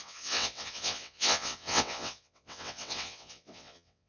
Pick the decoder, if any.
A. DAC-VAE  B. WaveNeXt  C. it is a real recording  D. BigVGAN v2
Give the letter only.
B